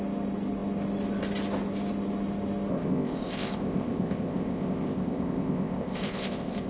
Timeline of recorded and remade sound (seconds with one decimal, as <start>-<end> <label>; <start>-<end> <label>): 0.0-2.7 recorded; 2.7-6.7 remade